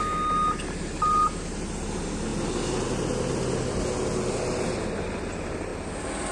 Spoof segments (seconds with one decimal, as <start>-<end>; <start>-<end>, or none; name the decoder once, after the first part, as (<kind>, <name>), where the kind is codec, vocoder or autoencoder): none